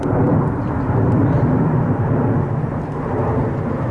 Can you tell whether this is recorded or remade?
recorded